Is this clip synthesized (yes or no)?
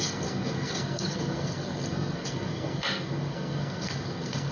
yes